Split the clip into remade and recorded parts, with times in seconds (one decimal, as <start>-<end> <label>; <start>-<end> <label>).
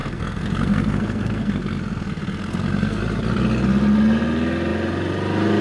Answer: 0.0-3.0 remade; 3.0-5.6 recorded